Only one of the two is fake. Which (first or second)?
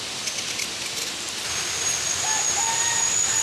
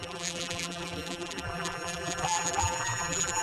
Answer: second